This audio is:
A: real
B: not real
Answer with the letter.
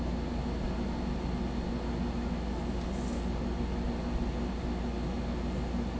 A